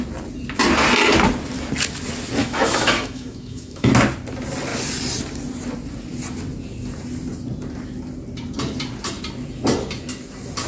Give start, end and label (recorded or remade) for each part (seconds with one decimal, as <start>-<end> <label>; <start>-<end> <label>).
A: 0.0-2.4 recorded; 2.4-3.9 remade; 3.9-10.7 recorded